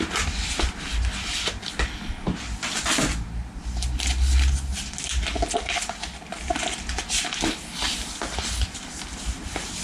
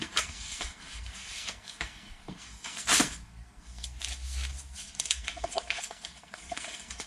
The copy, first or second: second